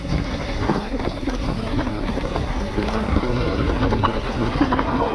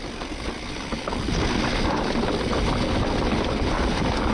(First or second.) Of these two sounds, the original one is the second